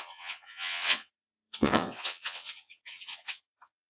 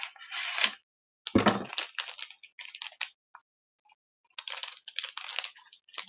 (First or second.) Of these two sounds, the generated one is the first